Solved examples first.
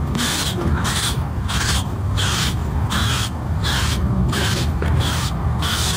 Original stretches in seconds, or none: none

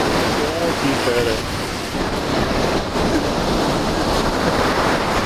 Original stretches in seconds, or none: 0.0-0.6; 1.4-2.3; 2.9-5.3

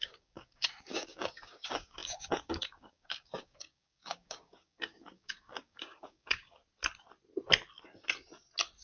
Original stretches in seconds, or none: 6.6-8.8

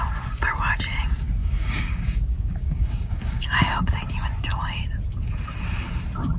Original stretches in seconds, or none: 0.0-1.4; 3.8-6.4